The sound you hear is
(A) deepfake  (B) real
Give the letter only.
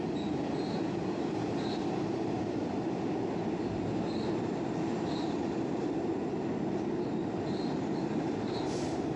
A